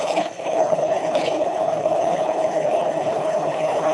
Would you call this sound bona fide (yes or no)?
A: no